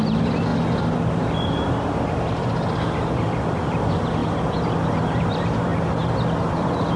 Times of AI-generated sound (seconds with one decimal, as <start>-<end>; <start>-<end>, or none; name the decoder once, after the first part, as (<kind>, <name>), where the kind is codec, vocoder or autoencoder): 0.0-0.5 (vocoder, BigVGAN v2); 3.5-4.2; 5.0-5.7; 6.5-7.0